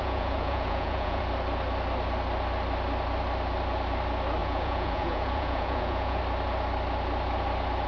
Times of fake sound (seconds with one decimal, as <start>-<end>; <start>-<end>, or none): 0.0-1.2; 4.4-6.2